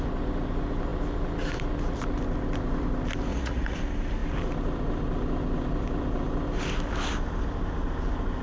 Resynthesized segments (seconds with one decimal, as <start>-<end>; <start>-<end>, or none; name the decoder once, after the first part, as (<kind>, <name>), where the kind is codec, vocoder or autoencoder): 3.3-3.8 (vocoder, Vocos)